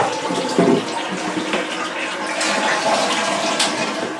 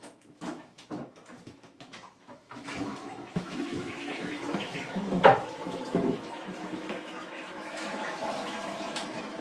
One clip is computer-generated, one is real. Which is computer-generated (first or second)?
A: second